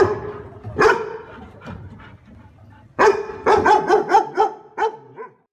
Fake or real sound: fake